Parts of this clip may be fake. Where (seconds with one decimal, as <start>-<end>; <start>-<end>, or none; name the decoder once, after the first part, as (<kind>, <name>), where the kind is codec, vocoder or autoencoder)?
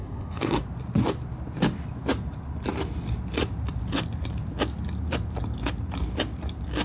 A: 0.0-0.6 (codec, SNAC)